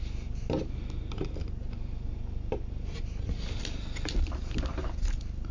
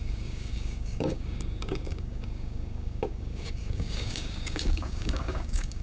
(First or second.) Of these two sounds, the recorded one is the first